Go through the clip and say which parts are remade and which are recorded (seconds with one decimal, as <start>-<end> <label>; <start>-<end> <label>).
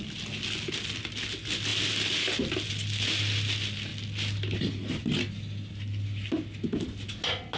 0.0-7.6 recorded